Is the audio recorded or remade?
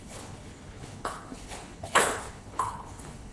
remade